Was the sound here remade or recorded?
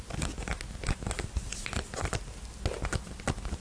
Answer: recorded